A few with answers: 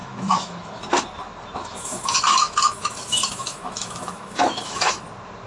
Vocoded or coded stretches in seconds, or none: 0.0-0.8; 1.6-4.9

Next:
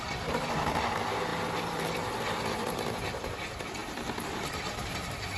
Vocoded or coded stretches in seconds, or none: none

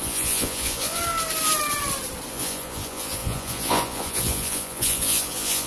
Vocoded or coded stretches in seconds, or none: 0.0-1.0; 2.3-5.7

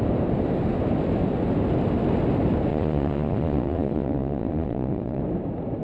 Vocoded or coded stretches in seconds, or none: 2.7-5.2

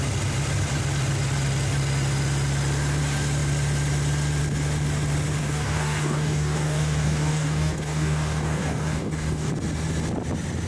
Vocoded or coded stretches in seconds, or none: 5.4-9.5